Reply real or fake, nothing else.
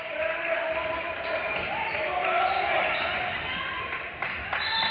fake